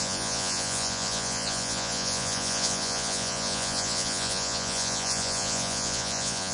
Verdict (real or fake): fake